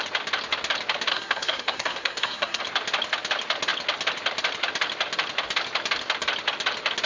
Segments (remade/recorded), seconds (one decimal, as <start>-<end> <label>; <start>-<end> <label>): 0.0-1.1 recorded; 1.1-2.6 remade; 2.6-7.1 recorded